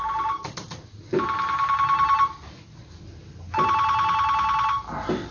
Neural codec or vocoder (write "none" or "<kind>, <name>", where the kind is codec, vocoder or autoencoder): none